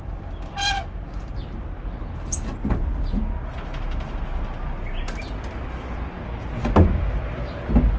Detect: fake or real real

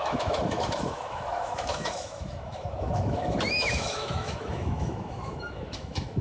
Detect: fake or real fake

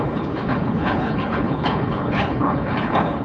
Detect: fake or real fake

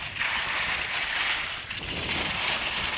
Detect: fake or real real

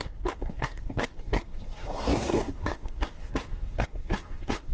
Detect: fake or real fake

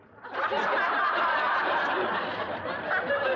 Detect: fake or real real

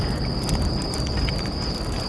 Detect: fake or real real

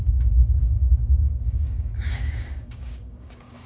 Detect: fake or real fake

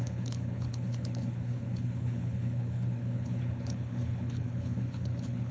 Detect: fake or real fake